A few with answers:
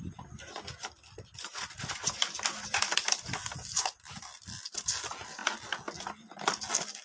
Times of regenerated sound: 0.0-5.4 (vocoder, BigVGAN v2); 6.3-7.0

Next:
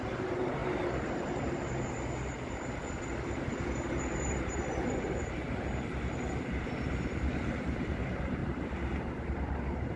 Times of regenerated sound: 0.0-8.4 (vocoder, BigVGAN v2); 9.3-10.0

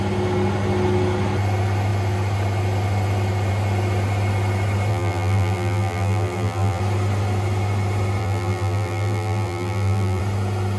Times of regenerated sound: 4.9-6.8 (vocoder, BigVGAN v2); 8.2-10.2

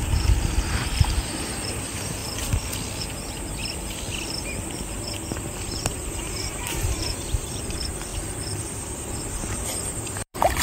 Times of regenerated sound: 0.0-2.2 (vocoder, BigVGAN v2); 3.0-3.6; 5.8-8.1; 8.6-10.6